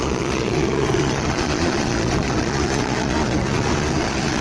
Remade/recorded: remade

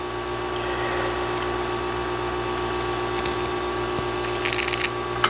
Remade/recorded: recorded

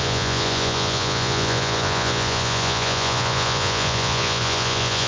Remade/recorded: remade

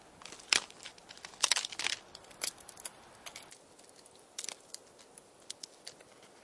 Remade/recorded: recorded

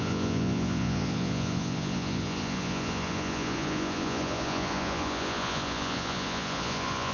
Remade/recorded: remade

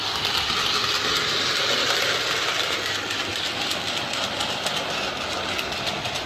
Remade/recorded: recorded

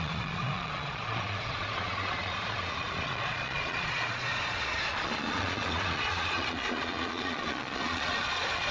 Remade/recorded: remade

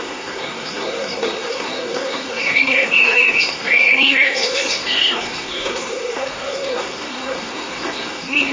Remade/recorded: remade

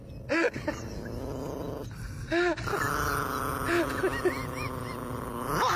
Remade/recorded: recorded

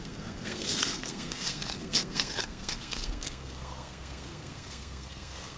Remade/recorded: remade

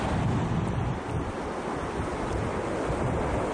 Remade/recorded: recorded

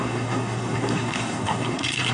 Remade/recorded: remade